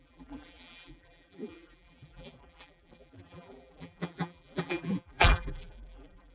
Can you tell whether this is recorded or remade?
remade